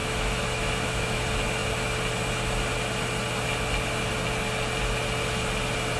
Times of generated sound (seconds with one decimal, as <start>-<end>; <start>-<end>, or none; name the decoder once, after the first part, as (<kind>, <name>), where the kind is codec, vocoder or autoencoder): 0.0-1.2 (autoencoder, DAC-VAE)